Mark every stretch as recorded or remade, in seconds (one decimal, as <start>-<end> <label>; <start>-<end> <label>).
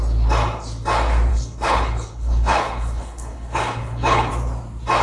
0.0-1.3 recorded; 1.3-4.3 remade; 4.3-5.0 recorded